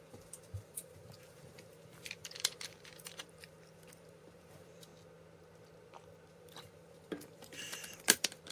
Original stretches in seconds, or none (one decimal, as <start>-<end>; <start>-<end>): 4.9-6.3